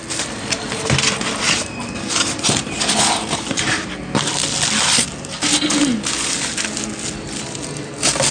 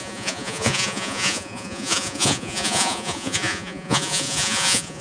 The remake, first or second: second